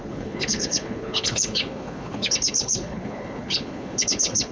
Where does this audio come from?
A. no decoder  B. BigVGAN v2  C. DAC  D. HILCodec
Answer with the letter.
D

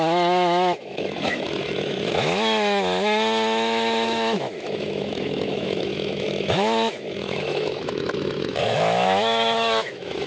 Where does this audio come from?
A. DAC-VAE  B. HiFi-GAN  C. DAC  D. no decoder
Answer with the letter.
A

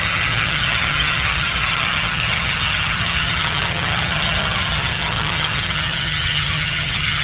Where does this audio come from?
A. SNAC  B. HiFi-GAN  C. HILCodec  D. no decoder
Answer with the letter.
B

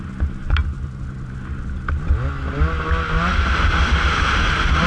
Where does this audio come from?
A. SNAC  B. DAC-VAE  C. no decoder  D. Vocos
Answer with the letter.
C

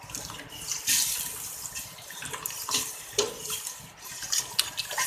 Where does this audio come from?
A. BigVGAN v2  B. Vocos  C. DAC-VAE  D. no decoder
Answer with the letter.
A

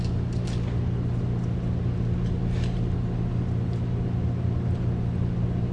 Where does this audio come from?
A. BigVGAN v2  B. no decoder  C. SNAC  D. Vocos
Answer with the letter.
B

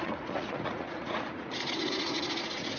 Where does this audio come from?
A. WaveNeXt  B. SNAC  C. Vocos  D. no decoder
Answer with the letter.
C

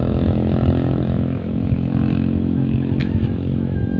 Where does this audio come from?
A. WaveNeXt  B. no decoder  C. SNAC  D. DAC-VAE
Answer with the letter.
D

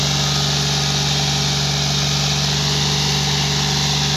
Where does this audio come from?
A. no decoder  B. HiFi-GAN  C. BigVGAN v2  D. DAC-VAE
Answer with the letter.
A